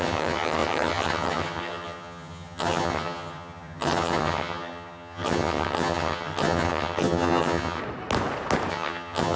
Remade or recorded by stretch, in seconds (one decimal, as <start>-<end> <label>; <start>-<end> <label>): 0.0-7.8 remade; 7.8-8.7 recorded; 8.7-9.4 remade